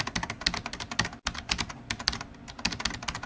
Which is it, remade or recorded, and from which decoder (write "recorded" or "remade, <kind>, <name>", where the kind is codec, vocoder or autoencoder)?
recorded